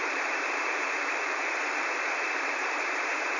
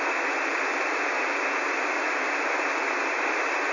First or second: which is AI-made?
first